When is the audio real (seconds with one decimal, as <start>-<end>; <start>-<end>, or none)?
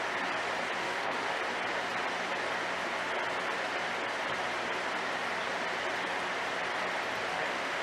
0.0-0.8; 1.4-7.3